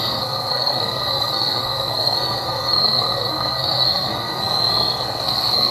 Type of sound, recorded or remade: remade